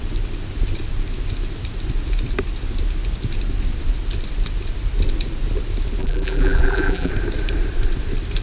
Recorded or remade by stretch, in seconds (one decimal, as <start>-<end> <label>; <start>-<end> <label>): 0.0-6.0 recorded; 6.0-7.1 remade; 7.1-8.4 recorded